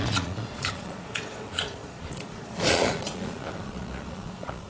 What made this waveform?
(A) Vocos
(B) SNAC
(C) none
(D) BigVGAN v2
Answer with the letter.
A